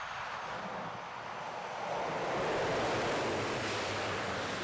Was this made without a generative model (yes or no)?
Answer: no